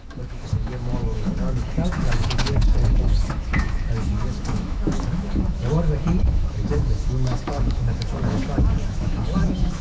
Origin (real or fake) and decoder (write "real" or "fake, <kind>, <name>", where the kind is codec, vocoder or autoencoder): fake, autoencoder, DAC-VAE